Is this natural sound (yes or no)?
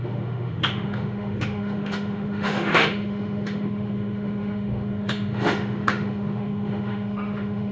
no